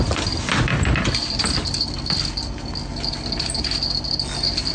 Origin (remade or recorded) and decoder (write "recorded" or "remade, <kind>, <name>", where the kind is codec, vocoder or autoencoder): recorded